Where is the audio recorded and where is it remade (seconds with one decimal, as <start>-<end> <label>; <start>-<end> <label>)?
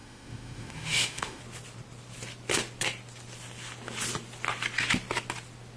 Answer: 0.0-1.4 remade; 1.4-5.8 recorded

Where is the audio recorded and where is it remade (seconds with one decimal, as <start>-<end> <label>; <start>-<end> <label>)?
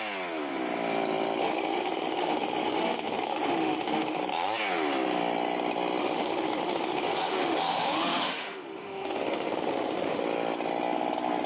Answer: 0.0-1.4 recorded; 1.4-4.2 remade; 4.2-6.0 recorded; 6.0-10.2 remade; 10.2-11.5 recorded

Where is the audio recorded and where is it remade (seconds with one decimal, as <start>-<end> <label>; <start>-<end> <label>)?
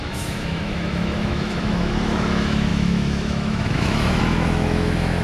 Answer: 0.0-5.2 remade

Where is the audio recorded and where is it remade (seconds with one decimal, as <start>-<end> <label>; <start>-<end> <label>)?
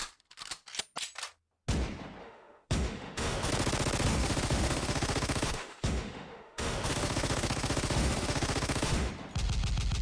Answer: 0.0-2.2 recorded; 2.2-3.5 remade; 3.5-4.1 recorded; 4.1-9.1 remade; 9.1-10.0 recorded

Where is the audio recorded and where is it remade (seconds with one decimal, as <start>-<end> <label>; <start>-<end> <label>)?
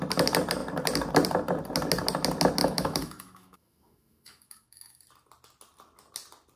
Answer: 0.0-2.6 recorded; 2.6-5.0 remade; 5.0-6.6 recorded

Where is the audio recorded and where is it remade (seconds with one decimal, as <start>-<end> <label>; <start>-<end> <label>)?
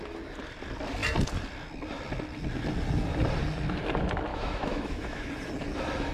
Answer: 0.0-4.3 recorded; 4.3-5.3 remade; 5.3-6.1 recorded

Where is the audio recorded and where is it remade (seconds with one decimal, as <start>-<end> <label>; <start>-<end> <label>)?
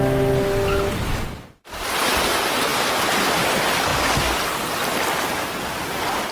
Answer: 0.0-6.3 recorded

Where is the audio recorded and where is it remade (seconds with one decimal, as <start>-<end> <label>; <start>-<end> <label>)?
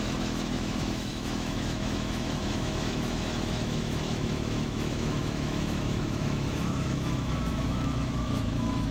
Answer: 0.0-8.9 remade